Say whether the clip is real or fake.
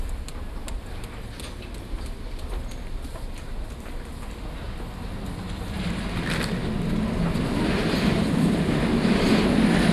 real